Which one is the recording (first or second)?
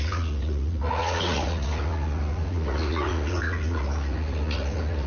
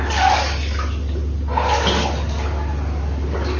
second